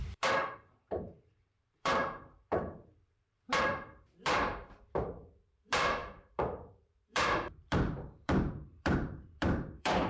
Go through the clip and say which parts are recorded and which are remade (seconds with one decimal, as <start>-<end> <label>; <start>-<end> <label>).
0.0-10.1 remade

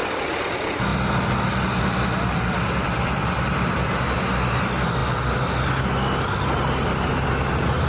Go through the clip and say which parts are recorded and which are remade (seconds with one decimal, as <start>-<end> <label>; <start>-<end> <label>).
0.0-0.5 remade; 0.5-0.9 recorded; 0.9-4.2 remade; 4.2-7.9 recorded

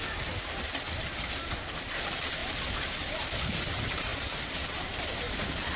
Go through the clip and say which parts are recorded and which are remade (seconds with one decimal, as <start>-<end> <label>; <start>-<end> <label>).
0.0-5.8 remade

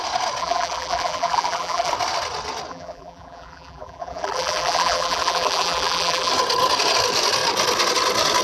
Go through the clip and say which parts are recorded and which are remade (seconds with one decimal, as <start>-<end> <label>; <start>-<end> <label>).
0.0-0.4 recorded; 0.4-1.9 remade; 1.9-2.7 recorded; 2.7-6.3 remade; 6.3-8.4 recorded

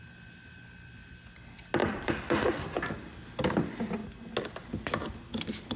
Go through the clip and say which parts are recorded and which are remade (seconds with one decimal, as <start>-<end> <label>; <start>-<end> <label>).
0.0-1.8 recorded; 1.8-2.5 remade; 2.5-5.8 recorded

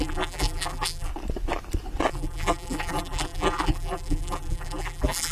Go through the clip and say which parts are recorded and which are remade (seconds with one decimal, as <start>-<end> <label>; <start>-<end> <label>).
0.0-1.1 remade; 1.1-2.1 recorded; 2.1-5.3 remade

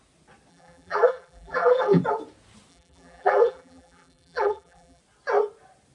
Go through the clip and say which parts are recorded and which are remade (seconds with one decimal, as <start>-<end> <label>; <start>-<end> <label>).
0.0-0.5 recorded; 0.5-2.0 remade; 2.0-2.7 recorded; 2.7-5.0 remade; 5.0-5.9 recorded